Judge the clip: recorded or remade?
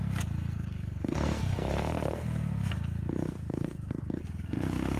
remade